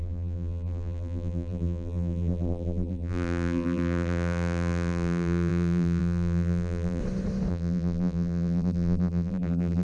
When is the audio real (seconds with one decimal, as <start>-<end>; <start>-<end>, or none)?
7.0-7.5